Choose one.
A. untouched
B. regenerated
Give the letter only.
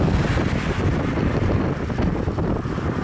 A